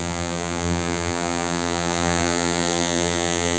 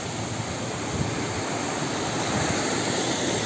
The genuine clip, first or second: second